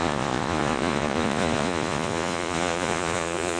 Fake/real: fake